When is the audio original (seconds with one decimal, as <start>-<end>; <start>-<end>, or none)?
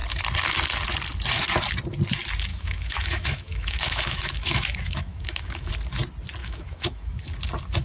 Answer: 0.0-2.5; 5.7-6.4; 7.2-7.8